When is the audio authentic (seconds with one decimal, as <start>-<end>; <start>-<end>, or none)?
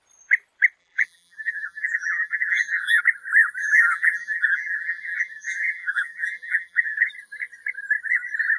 0.0-0.8; 3.0-3.6; 7.1-8.6